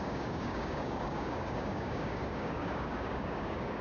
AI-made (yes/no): yes